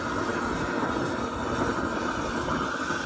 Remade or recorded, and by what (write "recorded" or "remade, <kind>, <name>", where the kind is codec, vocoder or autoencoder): remade, vocoder, BigVGAN v2